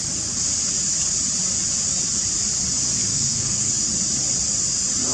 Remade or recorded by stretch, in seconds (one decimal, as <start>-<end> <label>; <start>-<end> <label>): 0.0-3.1 recorded; 3.1-3.7 remade; 3.7-5.1 recorded